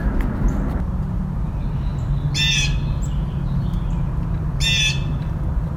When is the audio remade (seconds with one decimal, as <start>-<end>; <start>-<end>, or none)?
none